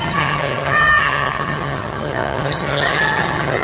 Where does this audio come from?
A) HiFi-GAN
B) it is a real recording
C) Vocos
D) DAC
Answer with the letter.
A